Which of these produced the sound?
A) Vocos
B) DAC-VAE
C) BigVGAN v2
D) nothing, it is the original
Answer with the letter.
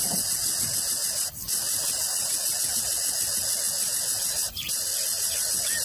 D